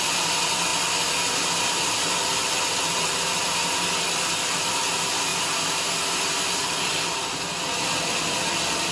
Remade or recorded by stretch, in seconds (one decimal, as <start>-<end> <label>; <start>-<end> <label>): 0.0-8.9 recorded